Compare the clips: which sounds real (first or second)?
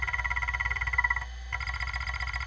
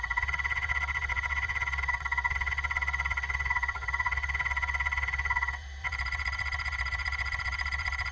first